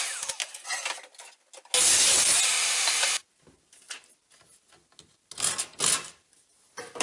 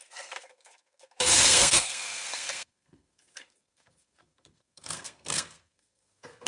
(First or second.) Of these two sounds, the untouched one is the first